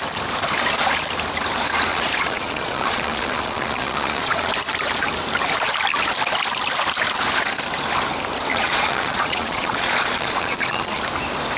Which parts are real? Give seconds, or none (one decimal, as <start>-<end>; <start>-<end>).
0.0-1.9; 4.5-8.5; 11.0-11.6